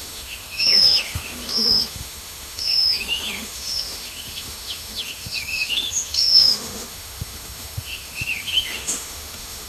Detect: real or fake fake